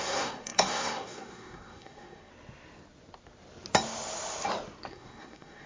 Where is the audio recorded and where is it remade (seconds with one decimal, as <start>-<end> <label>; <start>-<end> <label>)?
0.0-2.3 remade; 2.3-4.9 recorded; 4.9-5.7 remade